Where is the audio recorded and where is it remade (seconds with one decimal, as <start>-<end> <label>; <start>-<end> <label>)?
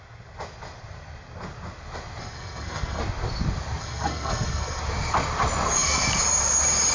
0.0-2.2 recorded; 2.2-3.0 remade; 3.0-3.8 recorded; 3.8-4.8 remade; 4.8-6.9 recorded